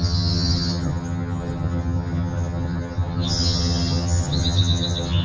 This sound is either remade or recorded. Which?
remade